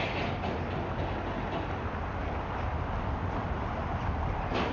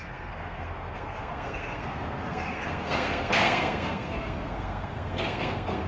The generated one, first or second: second